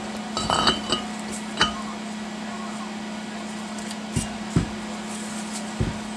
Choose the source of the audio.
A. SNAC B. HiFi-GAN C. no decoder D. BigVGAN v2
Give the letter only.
C